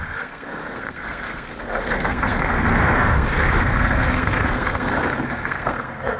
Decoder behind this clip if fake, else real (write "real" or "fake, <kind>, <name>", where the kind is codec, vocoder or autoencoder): fake, codec, SNAC